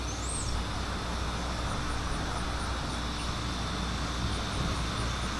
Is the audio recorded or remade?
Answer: recorded